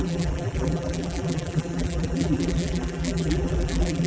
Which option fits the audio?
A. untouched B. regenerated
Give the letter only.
B